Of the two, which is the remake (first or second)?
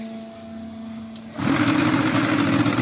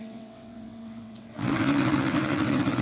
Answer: second